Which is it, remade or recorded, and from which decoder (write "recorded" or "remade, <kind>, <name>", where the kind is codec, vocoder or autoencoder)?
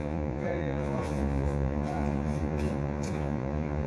remade, vocoder, Vocos